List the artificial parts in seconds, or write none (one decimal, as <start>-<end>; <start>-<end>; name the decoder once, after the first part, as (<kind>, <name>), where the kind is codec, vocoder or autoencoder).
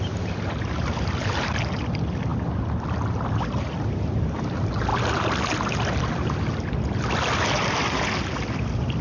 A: none